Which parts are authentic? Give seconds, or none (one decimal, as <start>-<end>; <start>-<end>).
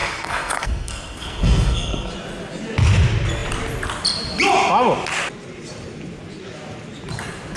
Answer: 2.1-7.6